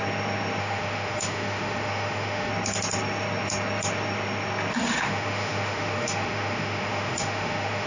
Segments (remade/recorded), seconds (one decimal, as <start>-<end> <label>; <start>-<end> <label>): 0.0-0.6 recorded; 0.6-2.5 remade; 2.5-4.7 recorded; 4.7-7.9 remade